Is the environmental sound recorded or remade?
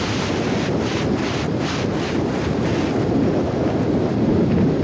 recorded